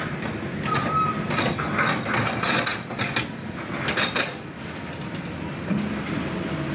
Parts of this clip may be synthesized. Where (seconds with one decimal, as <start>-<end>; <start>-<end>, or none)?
none